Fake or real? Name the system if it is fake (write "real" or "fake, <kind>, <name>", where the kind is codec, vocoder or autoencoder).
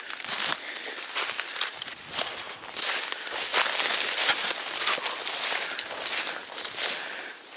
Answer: real